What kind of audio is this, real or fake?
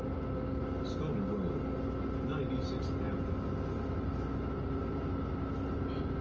real